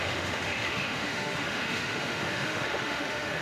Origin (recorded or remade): remade